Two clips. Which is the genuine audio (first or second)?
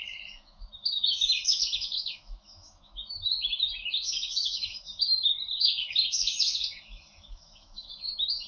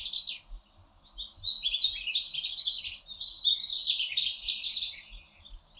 second